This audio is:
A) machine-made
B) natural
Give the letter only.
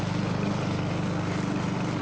B